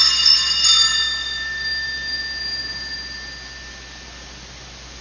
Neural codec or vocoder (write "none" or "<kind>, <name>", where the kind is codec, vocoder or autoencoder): none